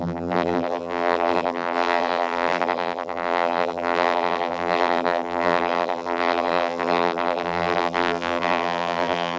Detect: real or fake fake